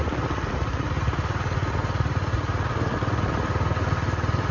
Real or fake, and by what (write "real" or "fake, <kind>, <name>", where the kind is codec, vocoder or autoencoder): real